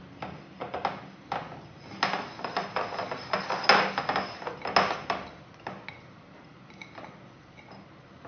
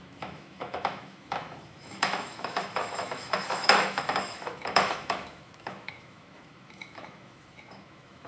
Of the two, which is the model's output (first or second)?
second